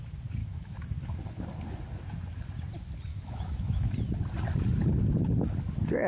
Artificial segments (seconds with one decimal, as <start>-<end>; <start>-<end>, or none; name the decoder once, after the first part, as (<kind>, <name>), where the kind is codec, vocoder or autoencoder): 0.4-0.9 (autoencoder, DAC-VAE); 3.1-3.9